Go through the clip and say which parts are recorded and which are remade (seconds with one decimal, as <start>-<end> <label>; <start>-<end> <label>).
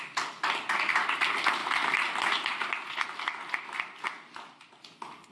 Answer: 0.0-5.3 recorded